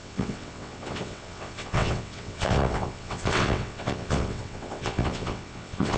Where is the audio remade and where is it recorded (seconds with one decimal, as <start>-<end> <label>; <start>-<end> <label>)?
0.0-6.0 remade